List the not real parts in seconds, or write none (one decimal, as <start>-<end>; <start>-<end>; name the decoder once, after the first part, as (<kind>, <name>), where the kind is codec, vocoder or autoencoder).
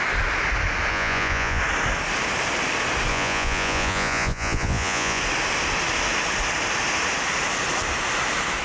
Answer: 0.9-1.6 (vocoder, Vocos); 3.1-5.2